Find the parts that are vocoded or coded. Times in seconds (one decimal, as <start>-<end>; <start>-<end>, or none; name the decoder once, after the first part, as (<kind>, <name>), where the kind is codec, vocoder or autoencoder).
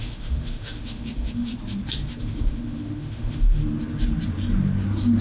0.0-1.5 (autoencoder, DAC-VAE); 2.2-3.6